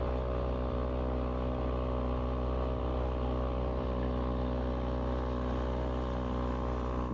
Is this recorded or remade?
recorded